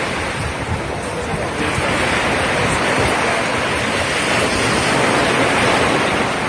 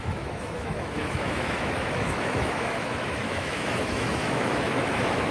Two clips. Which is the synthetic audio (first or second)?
second